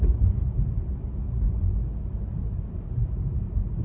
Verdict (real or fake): real